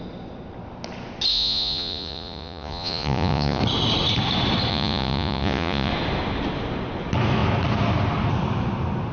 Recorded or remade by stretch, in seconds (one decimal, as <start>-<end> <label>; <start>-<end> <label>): 0.0-1.3 recorded; 1.3-3.6 remade; 3.6-4.7 recorded; 4.7-5.9 remade; 5.9-9.1 recorded